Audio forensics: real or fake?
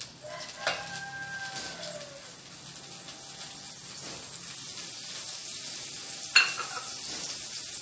real